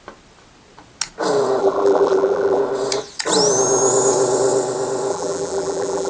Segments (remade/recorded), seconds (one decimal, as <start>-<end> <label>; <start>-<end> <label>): 0.0-1.6 recorded; 1.6-2.6 remade; 2.6-5.1 recorded; 5.1-6.1 remade